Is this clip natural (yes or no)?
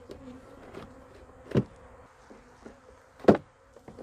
yes